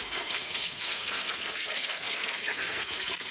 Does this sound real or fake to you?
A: fake